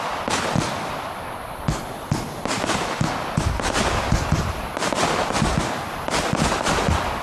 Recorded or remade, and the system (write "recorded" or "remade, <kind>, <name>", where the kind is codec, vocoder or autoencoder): recorded